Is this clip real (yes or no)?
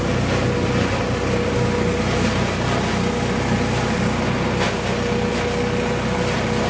yes